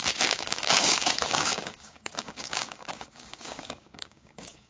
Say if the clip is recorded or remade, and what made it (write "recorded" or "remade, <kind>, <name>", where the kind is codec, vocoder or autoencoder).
remade, codec, DAC